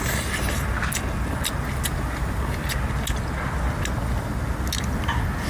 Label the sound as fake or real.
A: real